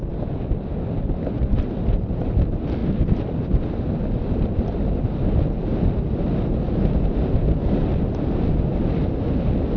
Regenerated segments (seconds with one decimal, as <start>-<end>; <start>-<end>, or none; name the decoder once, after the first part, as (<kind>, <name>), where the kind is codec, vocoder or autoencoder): none